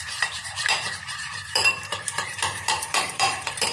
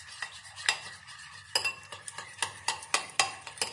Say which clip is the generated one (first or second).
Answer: first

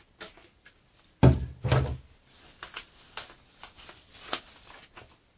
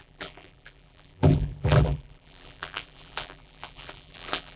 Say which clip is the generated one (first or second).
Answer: second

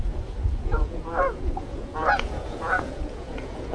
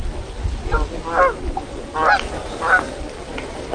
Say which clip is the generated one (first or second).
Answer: first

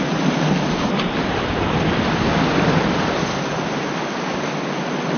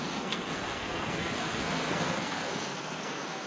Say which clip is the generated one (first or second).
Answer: second